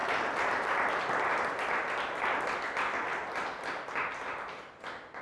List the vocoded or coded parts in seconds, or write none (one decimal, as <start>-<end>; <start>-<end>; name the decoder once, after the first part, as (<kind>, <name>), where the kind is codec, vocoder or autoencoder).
none